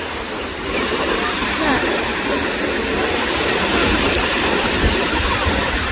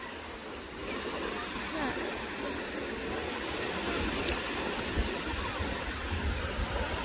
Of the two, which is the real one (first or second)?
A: second